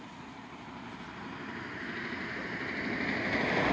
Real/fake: real